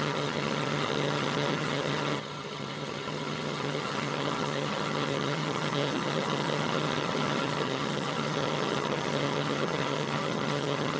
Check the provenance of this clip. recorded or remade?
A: remade